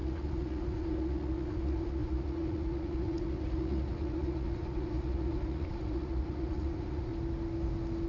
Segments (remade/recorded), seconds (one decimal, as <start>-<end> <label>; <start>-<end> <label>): 0.0-7.1 remade; 7.1-8.1 recorded